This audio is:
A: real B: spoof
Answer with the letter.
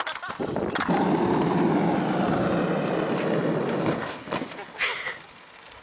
A